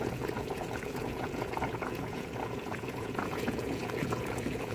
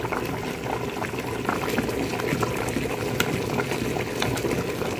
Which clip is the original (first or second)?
second